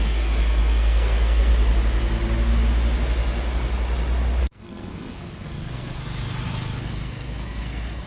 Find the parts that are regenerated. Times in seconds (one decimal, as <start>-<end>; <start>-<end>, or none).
0.0-1.5; 4.4-6.0; 6.8-8.1